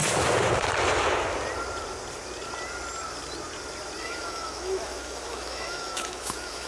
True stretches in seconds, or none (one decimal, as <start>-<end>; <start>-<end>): 0.0-4.0